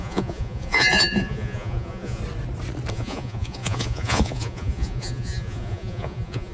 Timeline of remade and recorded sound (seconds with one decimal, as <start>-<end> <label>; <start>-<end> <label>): 0.0-2.2 remade; 2.2-2.9 recorded; 2.9-6.5 remade